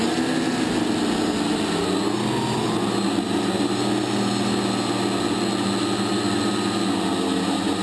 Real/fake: real